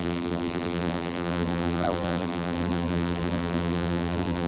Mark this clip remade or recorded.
remade